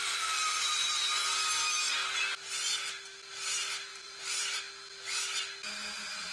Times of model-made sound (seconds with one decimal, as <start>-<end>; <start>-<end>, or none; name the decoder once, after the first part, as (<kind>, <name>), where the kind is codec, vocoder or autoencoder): 0.0-1.0 (vocoder, BigVGAN v2); 3.9-4.6